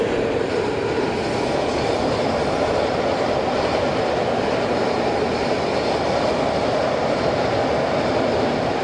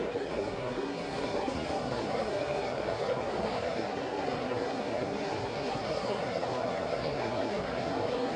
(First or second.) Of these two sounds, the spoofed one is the second